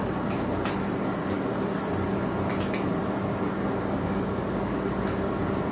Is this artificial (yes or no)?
no